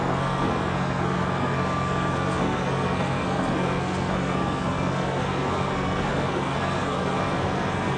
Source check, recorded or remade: remade